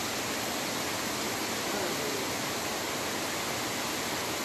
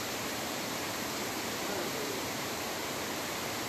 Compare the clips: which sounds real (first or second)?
first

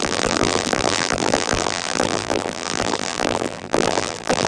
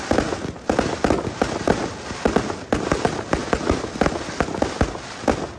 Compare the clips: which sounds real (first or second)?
second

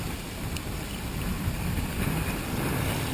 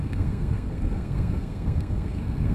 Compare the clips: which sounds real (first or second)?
first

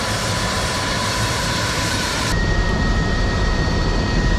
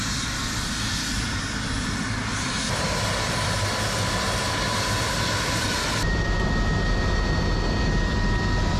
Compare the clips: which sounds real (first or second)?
second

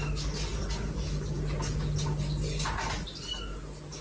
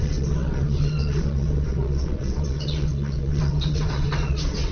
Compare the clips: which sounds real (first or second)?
first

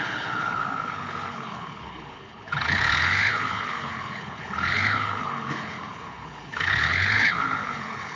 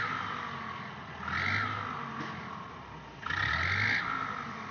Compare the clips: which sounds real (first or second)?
second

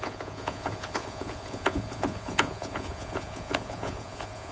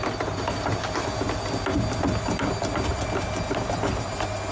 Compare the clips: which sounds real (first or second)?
second